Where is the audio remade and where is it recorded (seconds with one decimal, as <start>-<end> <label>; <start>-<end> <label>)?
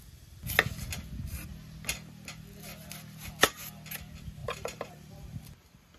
0.0-4.4 recorded; 4.4-5.4 remade; 5.4-6.0 recorded